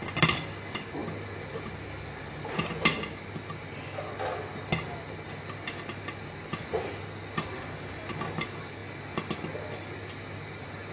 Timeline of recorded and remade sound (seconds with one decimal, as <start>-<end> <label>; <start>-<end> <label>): 0.0-10.9 recorded